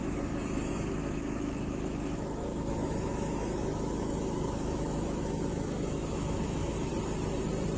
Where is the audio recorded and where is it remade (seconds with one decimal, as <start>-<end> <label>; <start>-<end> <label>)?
0.0-6.9 remade; 6.9-7.8 recorded